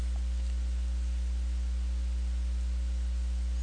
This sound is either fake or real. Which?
real